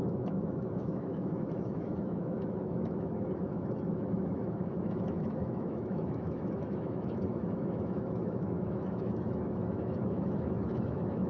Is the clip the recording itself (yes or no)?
no